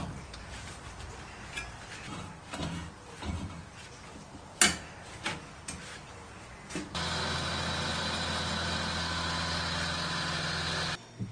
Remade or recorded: recorded